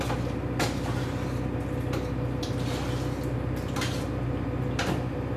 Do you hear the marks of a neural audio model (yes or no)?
no